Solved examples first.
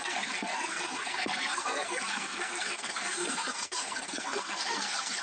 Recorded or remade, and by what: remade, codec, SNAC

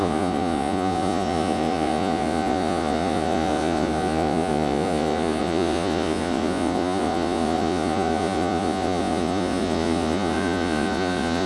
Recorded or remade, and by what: remade, vocoder, Vocos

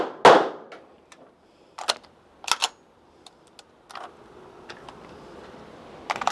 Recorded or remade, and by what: recorded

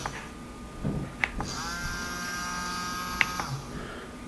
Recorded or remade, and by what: recorded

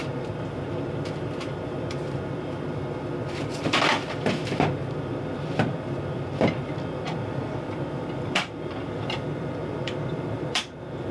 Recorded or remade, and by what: remade, vocoder, BigVGAN v2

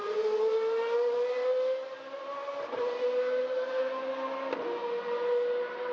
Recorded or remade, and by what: recorded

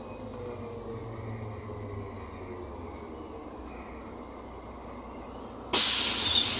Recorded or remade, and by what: recorded